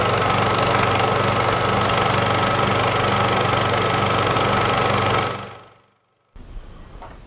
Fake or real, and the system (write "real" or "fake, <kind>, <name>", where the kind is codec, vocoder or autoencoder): real